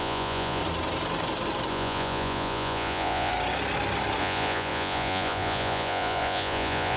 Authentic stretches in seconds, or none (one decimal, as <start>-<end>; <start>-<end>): 0.6-1.7; 3.3-4.2